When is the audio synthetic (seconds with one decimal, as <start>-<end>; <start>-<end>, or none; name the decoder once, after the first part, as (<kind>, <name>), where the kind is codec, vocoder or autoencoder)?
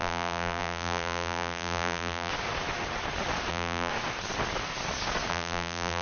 0.0-2.3 (vocoder, BigVGAN v2); 3.5-3.9; 5.3-6.0